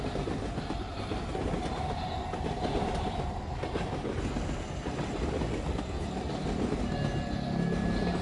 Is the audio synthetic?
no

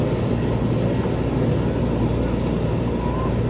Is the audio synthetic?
no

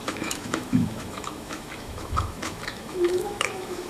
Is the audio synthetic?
yes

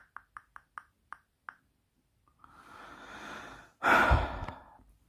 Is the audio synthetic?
no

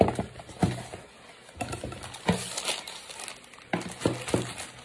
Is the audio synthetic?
no